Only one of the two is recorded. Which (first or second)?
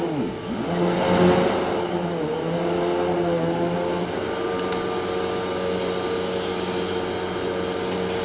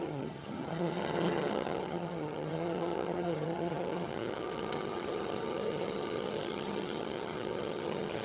first